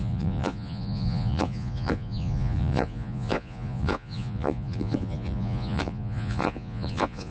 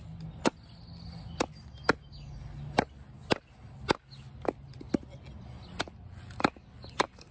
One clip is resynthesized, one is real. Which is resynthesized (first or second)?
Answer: first